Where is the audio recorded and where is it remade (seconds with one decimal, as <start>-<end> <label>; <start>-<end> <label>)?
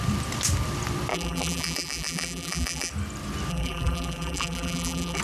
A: 0.0-1.1 recorded; 1.1-2.9 remade; 2.9-3.5 recorded; 3.5-5.2 remade